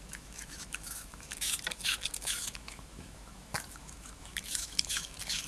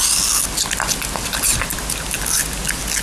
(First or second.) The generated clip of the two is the first